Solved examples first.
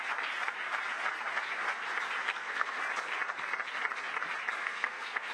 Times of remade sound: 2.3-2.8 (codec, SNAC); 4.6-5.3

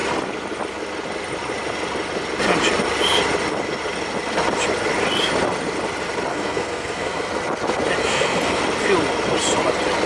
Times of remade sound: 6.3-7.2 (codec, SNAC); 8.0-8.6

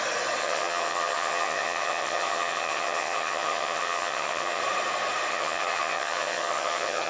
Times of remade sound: 0.4-4.6 (vocoder, HiFi-GAN); 5.3-7.1

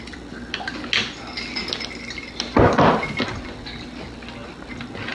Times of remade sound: none

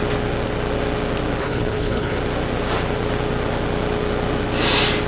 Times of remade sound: 1.4-2.2 (codec, HILCodec)